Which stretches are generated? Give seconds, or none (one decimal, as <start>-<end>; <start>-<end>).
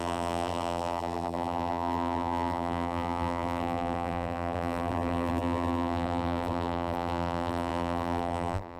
0.0-8.8